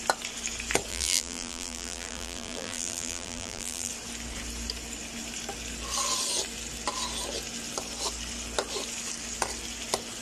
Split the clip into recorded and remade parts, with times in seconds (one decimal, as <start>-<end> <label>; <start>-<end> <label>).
0.0-0.9 recorded; 0.9-3.9 remade; 3.9-10.2 recorded